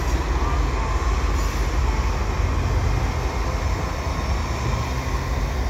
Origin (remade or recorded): recorded